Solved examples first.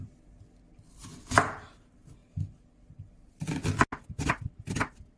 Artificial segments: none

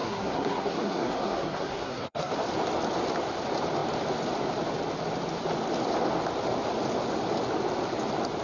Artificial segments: 0.0-2.3 (codec, SNAC)

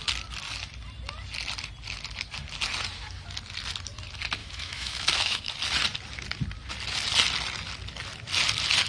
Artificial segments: 4.4-5.5 (autoencoder, DAC-VAE)

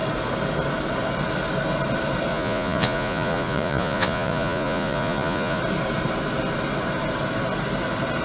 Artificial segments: 2.3-5.6 (vocoder, Vocos)